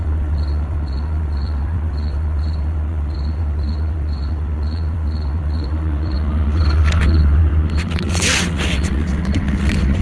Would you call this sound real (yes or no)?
no